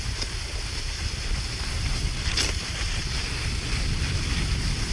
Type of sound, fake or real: real